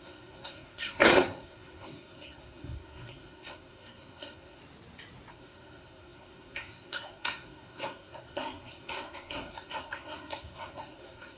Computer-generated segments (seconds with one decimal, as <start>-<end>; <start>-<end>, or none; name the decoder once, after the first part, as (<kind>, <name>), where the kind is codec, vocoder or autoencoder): 0.0-4.6 (codec, SNAC); 5.3-11.4